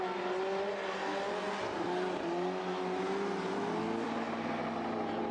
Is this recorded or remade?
recorded